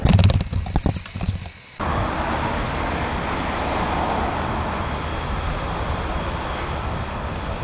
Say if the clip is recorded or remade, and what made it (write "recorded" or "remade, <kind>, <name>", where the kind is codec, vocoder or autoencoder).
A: recorded